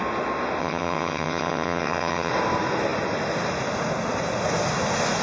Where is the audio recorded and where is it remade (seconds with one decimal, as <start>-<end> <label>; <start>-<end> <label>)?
0.0-0.6 recorded; 0.6-2.3 remade; 2.3-5.2 recorded